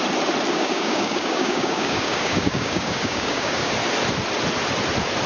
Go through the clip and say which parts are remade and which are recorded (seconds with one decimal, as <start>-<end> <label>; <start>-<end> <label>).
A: 0.0-0.5 recorded; 0.5-3.7 remade; 3.7-5.3 recorded